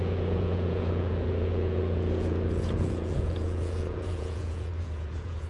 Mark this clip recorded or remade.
remade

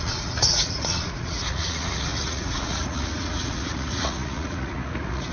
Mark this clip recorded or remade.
remade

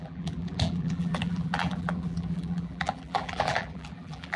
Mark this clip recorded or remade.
remade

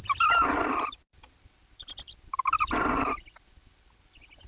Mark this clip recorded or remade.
recorded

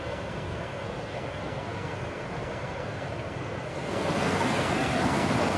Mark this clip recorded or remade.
remade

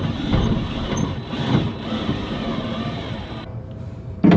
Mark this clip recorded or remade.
remade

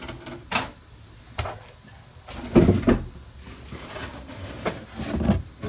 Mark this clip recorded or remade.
recorded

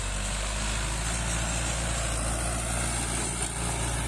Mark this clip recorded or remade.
recorded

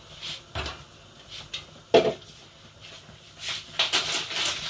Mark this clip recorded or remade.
recorded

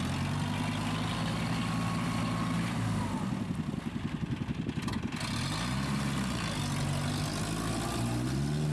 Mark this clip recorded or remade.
recorded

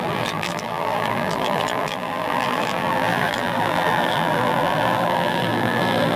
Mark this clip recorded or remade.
remade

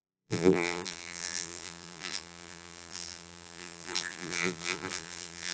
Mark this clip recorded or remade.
remade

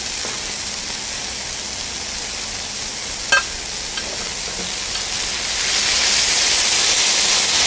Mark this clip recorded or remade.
recorded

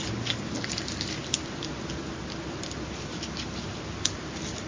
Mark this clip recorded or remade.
recorded